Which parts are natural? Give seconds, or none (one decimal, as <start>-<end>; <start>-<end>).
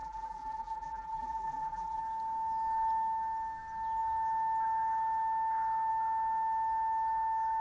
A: 2.0-7.6